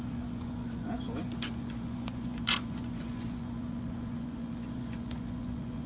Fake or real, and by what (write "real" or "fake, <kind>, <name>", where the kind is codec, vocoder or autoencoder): fake, vocoder, Vocos